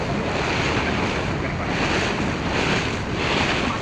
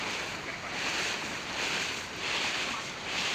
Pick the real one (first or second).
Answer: first